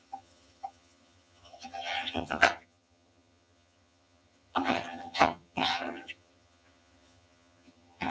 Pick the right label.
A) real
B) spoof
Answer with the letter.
B